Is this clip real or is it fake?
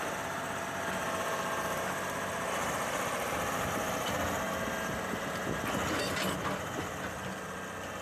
real